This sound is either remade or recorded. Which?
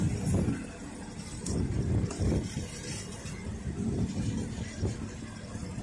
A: recorded